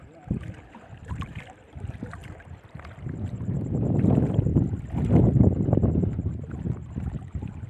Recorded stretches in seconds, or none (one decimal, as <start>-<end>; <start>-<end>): 2.2-3.1; 4.5-5.1